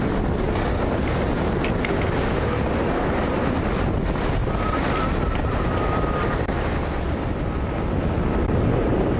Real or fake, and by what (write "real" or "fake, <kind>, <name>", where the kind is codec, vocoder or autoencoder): real